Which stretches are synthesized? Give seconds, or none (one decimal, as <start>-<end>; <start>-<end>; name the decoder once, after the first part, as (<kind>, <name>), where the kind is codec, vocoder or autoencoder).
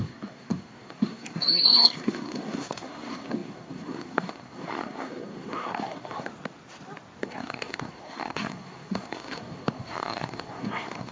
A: 0.0-6.3 (codec, SNAC); 7.2-11.1